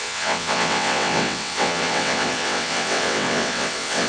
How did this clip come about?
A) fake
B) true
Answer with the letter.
A